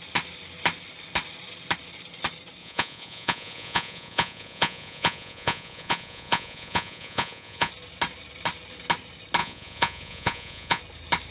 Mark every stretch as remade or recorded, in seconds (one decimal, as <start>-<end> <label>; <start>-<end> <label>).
0.0-2.6 recorded; 2.6-7.7 remade; 7.7-9.4 recorded; 9.4-10.8 remade; 10.8-11.3 recorded